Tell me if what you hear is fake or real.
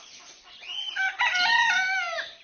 real